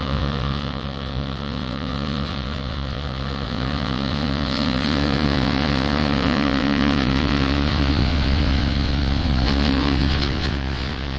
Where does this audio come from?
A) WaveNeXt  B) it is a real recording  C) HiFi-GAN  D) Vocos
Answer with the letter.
A